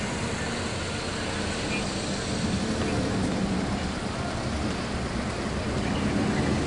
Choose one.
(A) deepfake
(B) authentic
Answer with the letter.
B